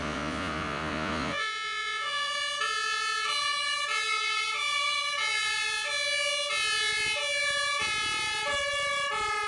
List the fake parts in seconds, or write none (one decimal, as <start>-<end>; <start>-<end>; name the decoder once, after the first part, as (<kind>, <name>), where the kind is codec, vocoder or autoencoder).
0.0-2.3 (vocoder, Vocos)